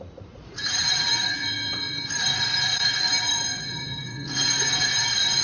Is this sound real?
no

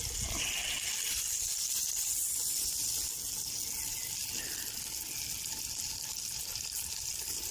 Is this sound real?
yes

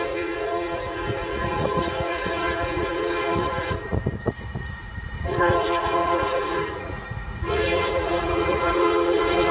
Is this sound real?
no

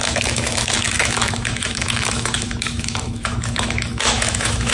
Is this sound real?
no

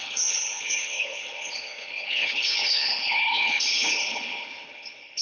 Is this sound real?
no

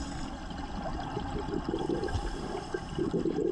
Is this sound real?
yes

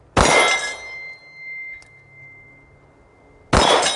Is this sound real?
yes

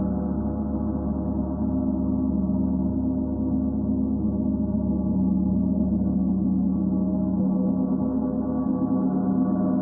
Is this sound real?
yes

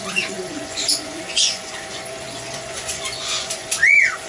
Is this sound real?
no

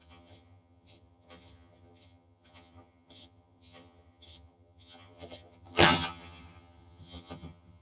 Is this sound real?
no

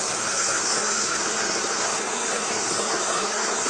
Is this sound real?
no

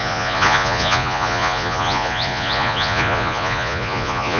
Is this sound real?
no